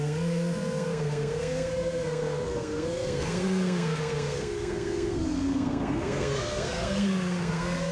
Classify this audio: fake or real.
fake